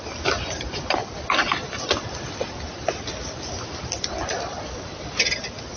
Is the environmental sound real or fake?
real